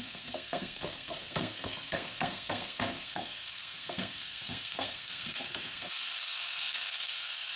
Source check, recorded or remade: remade